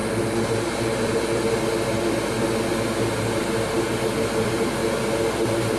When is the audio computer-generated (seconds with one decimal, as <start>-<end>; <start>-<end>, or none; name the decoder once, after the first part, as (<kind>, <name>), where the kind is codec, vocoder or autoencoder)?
none